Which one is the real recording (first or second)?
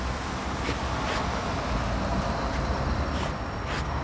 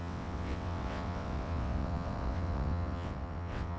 first